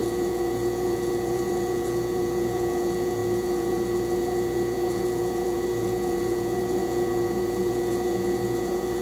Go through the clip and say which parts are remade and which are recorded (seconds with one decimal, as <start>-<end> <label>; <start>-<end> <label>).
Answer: 0.0-9.0 remade